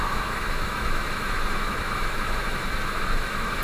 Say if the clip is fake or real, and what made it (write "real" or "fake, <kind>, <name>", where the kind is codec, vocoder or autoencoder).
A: fake, autoencoder, DAC-VAE